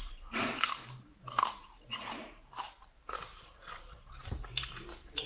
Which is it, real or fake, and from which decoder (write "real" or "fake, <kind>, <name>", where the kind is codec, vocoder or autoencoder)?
fake, vocoder, BigVGAN v2